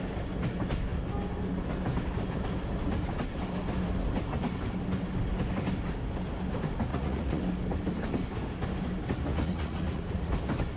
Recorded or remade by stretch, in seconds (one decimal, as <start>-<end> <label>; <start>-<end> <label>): 0.0-6.9 recorded; 6.9-7.4 remade; 7.4-9.3 recorded; 9.3-10.3 remade; 10.3-10.8 recorded